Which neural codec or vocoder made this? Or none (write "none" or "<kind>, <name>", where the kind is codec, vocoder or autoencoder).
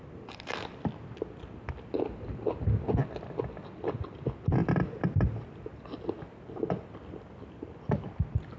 none